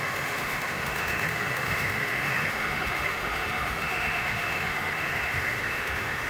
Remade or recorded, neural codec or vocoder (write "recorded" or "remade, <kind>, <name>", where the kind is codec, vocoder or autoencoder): remade, autoencoder, DAC-VAE